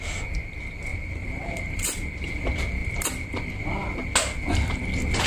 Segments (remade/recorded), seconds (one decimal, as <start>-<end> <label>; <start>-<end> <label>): 0.0-0.9 recorded; 0.9-2.3 remade; 2.3-2.8 recorded; 2.8-3.5 remade; 3.5-5.3 recorded